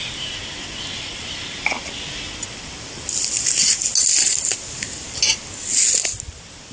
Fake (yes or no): no